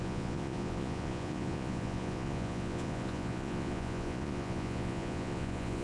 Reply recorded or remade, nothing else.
remade